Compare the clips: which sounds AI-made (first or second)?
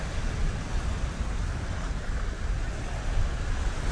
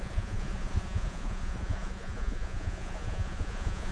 second